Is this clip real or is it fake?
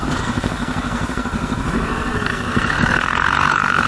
fake